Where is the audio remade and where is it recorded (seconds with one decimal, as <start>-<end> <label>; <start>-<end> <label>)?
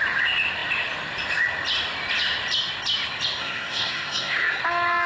0.0-3.4 recorded; 3.4-4.6 remade; 4.6-5.1 recorded